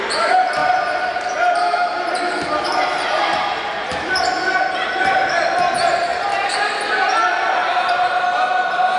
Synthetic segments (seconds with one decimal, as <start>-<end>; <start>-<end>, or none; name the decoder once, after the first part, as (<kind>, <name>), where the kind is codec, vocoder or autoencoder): 0.6-3.5 (vocoder, BigVGAN v2); 7.6-8.2